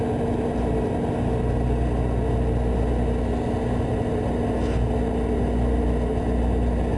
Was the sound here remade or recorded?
recorded